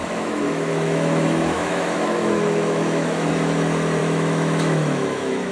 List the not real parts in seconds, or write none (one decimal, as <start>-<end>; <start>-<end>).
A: 0.0-3.3; 4.0-5.5